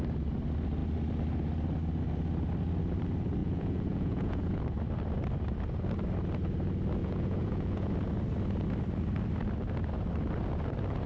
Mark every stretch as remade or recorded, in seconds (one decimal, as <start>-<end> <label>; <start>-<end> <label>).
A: 0.0-3.4 recorded; 3.4-4.6 remade; 4.6-7.0 recorded; 7.0-7.9 remade; 7.9-11.1 recorded